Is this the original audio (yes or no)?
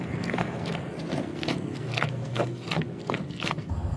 no